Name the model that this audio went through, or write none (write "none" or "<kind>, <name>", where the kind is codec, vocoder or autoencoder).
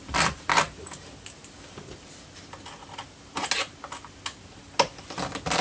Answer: none